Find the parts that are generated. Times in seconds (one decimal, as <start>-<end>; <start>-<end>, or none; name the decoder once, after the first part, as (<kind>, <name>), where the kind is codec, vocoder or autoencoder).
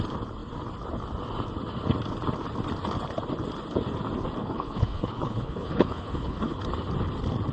4.4-6.6 (codec, HILCodec)